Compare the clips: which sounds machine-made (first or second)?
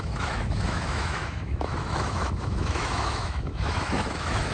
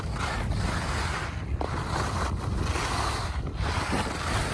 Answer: first